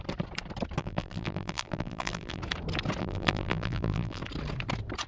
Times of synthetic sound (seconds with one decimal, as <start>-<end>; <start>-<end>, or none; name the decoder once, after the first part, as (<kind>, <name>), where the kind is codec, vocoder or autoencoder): 0.8-2.4 (vocoder, BigVGAN v2); 3.0-4.2

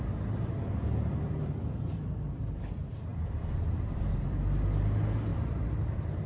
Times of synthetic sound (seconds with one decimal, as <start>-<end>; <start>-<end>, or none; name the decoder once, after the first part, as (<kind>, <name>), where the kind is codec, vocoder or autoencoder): 3.1-4.1 (vocoder, BigVGAN v2); 5.3-6.3

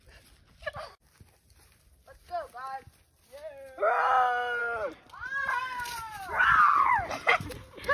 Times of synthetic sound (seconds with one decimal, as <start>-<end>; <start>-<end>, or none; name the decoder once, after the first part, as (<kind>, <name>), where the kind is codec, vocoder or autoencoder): none

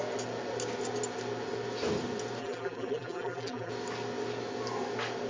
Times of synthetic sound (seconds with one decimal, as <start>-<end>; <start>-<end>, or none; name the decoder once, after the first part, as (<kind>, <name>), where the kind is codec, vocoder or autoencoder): 2.4-3.7 (vocoder, BigVGAN v2)